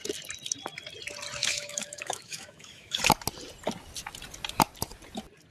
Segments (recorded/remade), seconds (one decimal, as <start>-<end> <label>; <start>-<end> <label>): 0.0-1.4 recorded; 1.4-3.0 remade; 3.0-5.5 recorded